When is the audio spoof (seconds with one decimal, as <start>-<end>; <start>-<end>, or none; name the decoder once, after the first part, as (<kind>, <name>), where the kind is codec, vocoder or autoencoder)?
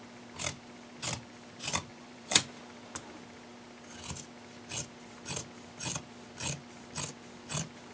1.9-2.5 (vocoder, Vocos)